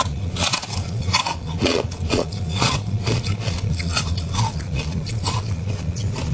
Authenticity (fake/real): fake